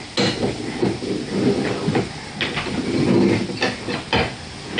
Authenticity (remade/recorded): recorded